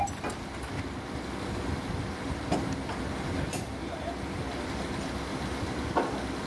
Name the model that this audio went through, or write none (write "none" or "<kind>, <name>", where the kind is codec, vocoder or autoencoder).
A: none